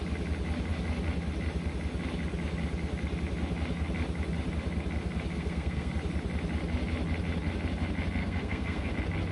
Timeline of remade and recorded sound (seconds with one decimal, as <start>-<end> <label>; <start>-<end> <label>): 0.0-5.3 recorded; 5.3-5.9 remade; 5.9-8.2 recorded; 8.2-8.9 remade; 8.9-9.3 recorded